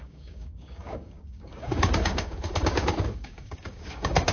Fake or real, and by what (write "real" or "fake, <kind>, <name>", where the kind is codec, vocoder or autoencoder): fake, codec, DAC